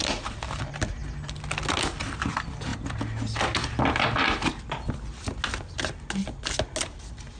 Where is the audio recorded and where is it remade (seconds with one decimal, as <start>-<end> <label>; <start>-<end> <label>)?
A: 0.0-7.4 recorded